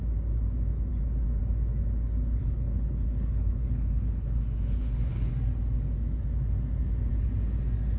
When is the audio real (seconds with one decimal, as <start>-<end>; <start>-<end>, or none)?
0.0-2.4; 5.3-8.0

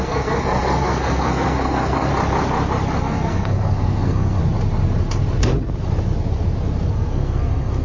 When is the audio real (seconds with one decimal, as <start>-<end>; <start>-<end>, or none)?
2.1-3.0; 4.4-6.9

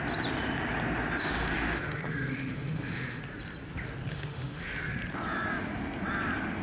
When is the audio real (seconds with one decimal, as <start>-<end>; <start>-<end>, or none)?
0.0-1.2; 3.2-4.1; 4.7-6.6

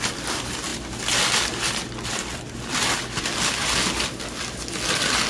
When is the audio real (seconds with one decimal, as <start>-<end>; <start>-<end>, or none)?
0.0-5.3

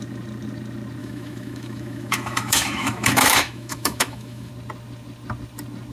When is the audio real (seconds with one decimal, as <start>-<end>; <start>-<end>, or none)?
0.0-1.0; 4.5-5.9

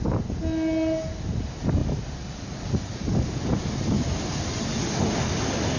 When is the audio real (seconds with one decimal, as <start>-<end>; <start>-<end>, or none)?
0.0-5.8

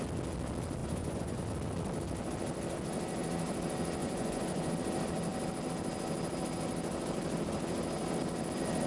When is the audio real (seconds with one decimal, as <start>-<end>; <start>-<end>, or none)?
0.0-0.8; 1.4-4.0; 4.7-8.9

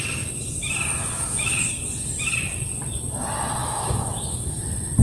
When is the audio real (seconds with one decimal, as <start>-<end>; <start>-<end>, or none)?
0.0-1.0; 1.7-3.6; 4.6-5.0